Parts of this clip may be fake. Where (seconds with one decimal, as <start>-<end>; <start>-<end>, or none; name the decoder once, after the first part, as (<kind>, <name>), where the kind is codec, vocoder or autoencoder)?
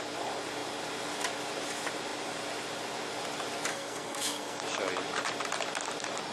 3.7-4.6 (codec, SNAC)